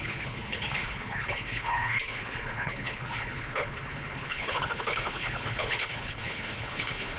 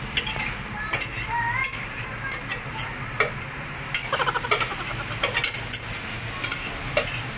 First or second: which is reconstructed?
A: first